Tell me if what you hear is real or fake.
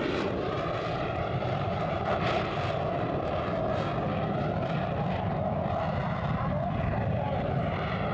fake